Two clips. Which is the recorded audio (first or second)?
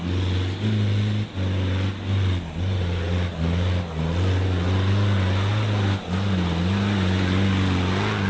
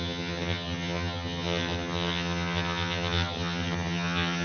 first